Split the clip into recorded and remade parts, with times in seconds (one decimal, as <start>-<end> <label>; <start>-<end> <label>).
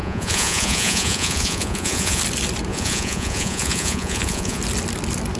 0.0-2.2 remade; 2.2-2.7 recorded; 2.7-4.6 remade; 4.6-5.4 recorded